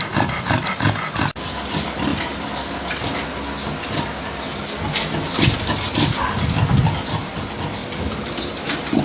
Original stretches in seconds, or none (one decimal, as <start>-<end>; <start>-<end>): 0.0-9.0